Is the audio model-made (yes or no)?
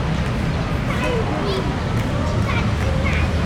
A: no